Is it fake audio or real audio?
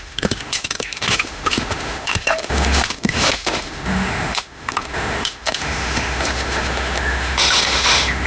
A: fake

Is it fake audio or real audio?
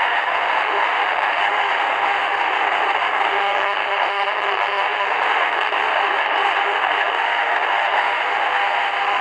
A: fake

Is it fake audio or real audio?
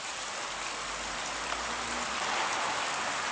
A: real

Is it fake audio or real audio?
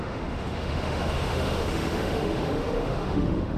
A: fake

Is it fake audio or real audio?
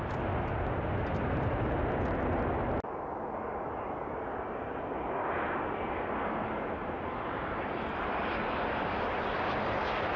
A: real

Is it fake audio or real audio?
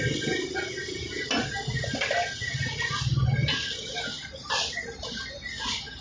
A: real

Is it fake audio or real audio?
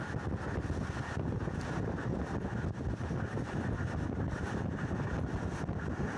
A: real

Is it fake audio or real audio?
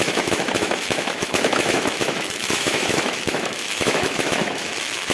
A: fake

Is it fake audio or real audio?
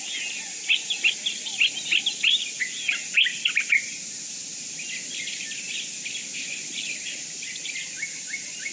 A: real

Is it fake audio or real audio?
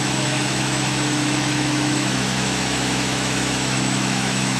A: fake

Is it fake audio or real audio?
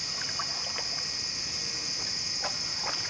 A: real